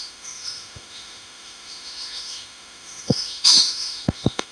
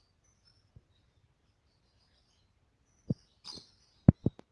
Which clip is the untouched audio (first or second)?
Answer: second